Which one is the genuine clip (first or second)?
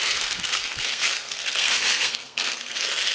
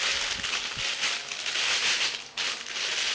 second